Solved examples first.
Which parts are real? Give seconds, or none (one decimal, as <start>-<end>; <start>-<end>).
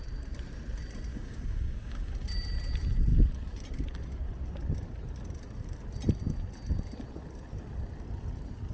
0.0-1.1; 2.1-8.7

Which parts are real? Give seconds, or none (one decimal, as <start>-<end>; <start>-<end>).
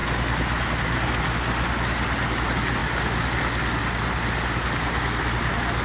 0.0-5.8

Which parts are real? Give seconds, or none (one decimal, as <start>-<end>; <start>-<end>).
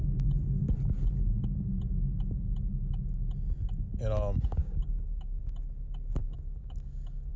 0.0-4.6; 5.4-6.2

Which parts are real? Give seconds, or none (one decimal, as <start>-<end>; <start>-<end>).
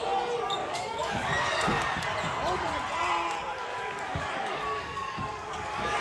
0.0-0.6; 1.8-3.7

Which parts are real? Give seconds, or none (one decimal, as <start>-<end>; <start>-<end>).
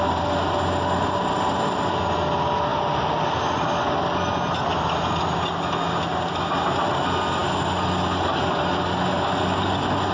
0.0-10.1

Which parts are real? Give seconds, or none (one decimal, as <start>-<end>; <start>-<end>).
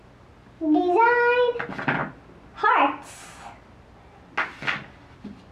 0.0-5.5